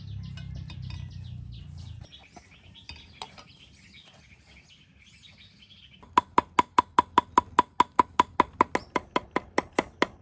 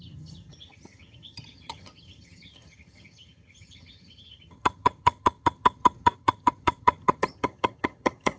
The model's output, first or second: second